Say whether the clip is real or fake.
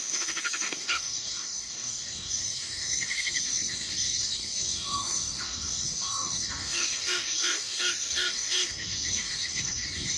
fake